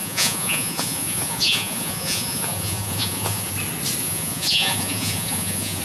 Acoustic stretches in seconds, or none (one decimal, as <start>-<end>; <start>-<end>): 3.5-4.0